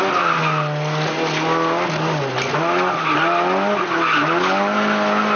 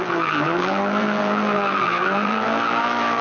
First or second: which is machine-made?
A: second